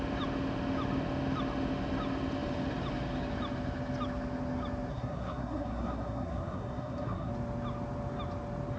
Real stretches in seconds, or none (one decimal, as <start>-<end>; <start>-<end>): 0.0-4.9; 7.3-8.8